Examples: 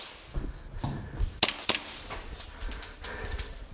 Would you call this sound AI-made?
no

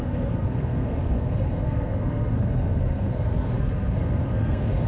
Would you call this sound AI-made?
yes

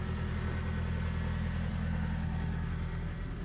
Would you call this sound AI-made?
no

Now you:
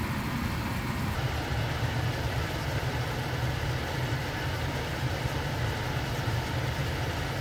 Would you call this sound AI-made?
no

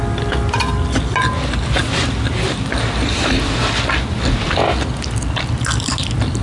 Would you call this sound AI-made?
no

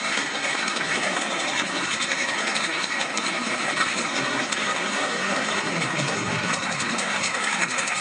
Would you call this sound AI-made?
yes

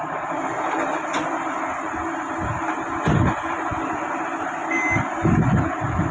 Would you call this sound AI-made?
no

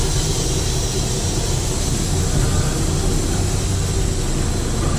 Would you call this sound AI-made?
no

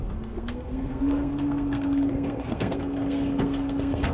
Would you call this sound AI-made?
yes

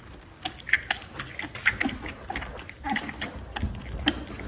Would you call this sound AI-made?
no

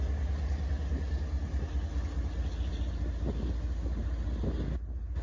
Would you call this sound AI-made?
no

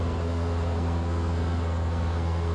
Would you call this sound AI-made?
yes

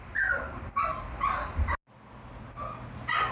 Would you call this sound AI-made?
no